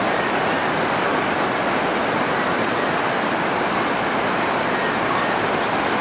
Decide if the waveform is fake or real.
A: real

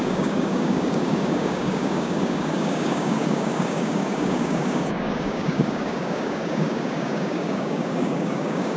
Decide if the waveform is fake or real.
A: fake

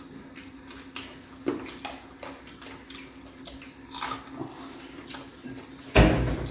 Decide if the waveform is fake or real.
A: real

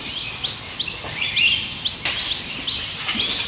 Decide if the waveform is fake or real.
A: real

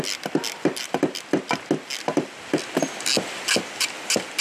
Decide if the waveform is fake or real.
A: real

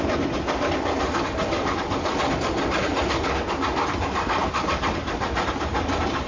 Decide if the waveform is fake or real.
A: real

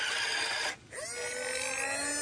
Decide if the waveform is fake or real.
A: real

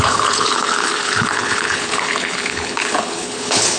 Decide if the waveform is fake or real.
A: fake